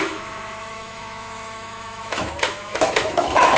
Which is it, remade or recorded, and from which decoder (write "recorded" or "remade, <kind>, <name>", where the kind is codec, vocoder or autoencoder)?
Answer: remade, autoencoder, DAC-VAE